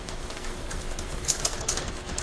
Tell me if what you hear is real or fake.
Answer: fake